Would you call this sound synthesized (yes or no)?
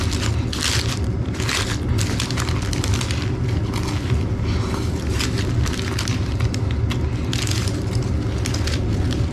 no